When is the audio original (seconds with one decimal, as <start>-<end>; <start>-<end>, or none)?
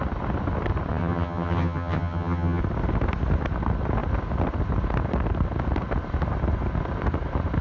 0.0-0.9; 2.6-7.6